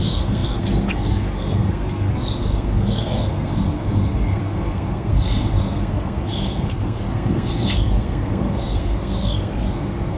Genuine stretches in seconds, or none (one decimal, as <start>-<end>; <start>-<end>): none